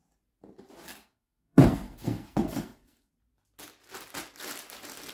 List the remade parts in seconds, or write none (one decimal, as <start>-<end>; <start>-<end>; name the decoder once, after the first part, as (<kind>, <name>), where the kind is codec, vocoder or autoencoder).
1.0-3.1 (codec, SNAC)